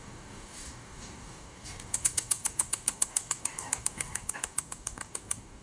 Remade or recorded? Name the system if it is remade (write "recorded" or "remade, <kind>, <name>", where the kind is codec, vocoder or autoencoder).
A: remade, codec, DAC